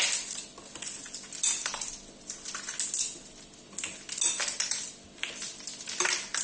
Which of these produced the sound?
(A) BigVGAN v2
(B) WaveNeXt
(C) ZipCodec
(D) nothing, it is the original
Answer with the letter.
D